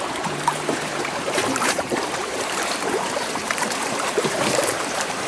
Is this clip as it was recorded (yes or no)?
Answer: no